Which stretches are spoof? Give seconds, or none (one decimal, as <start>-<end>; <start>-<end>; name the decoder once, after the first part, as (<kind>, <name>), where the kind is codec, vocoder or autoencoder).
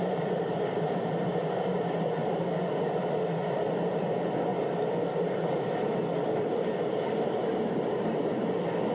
0.0-1.2 (vocoder, BigVGAN v2)